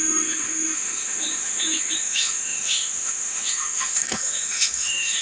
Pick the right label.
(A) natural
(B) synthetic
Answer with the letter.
B